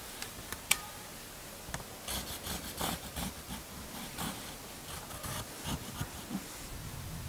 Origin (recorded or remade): recorded